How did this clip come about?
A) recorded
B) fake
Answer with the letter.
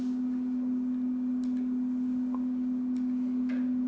A